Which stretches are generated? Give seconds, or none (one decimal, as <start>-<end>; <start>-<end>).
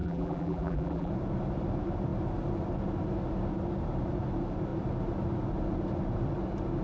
0.0-1.1